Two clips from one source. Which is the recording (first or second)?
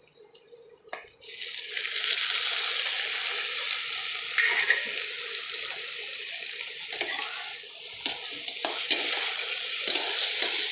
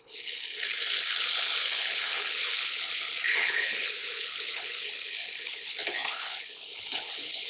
first